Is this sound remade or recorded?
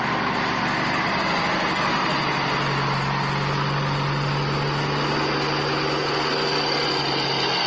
recorded